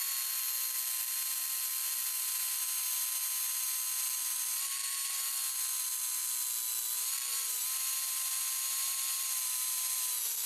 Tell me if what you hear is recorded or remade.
recorded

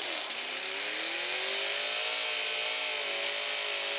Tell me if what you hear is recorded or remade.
recorded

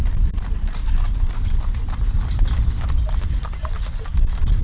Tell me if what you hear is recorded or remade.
recorded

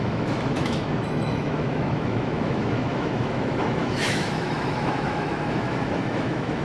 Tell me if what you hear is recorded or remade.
remade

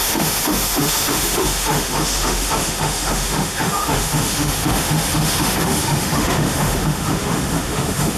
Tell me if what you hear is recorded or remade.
remade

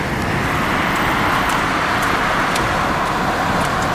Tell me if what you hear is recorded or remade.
recorded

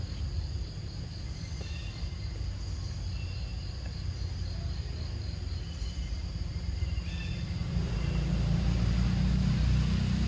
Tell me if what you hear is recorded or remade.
recorded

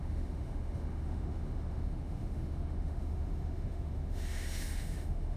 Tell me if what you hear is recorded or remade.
remade